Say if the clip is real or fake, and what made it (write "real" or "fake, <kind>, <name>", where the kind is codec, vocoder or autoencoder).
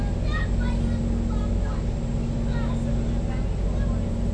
real